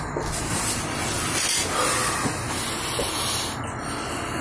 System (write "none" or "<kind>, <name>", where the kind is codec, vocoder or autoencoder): none